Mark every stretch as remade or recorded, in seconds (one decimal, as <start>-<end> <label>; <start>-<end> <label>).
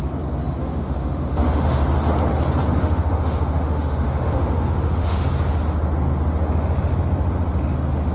0.0-0.6 recorded; 0.6-1.8 remade; 1.8-2.8 recorded; 2.8-5.3 remade; 5.3-8.1 recorded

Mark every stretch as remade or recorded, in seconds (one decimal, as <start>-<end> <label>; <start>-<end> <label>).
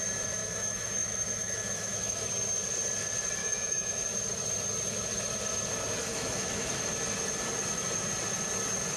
0.0-0.4 recorded; 0.4-2.3 remade; 2.3-3.4 recorded; 3.4-4.0 remade; 4.0-6.0 recorded; 6.0-6.7 remade; 6.7-9.0 recorded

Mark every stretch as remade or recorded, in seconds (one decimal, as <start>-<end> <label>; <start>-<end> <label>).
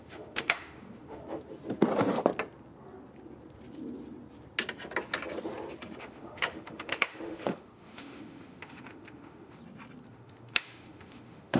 0.0-1.2 remade; 1.2-6.0 recorded; 6.0-9.6 remade; 9.6-10.1 recorded; 10.1-11.6 remade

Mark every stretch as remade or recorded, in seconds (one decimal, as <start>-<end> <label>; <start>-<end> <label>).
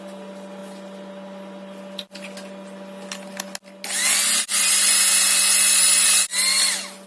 0.0-7.1 recorded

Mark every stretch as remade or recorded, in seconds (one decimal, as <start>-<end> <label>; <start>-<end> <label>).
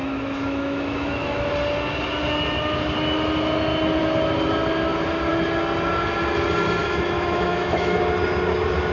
0.0-1.5 remade; 1.5-6.8 recorded; 6.8-8.0 remade; 8.0-8.9 recorded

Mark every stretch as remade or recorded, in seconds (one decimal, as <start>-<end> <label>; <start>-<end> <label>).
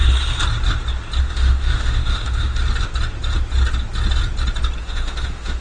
0.0-1.2 recorded; 1.2-2.6 remade; 2.6-4.8 recorded; 4.8-5.6 remade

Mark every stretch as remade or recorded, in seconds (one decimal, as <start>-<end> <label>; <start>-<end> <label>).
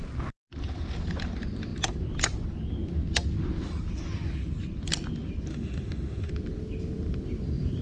0.0-5.5 recorded; 5.5-6.3 remade; 6.3-7.8 recorded